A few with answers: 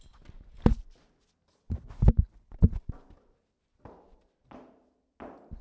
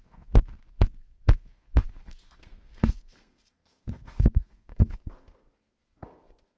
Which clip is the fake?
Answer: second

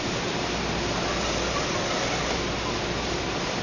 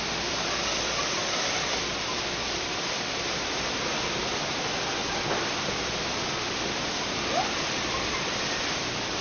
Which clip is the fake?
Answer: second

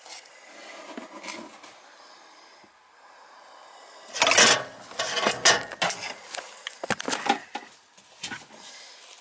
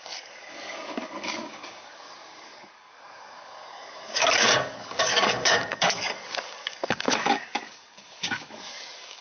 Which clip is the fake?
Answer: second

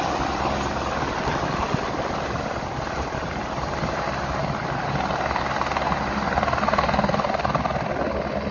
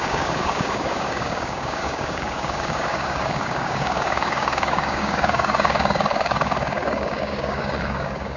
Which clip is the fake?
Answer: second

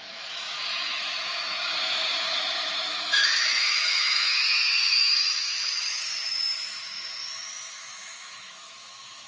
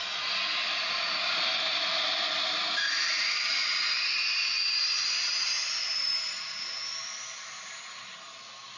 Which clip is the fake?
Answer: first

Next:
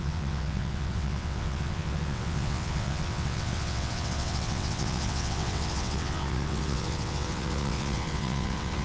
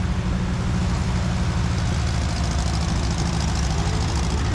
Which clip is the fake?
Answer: first